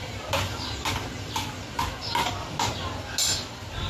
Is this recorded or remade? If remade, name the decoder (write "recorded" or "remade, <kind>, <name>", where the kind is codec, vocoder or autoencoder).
recorded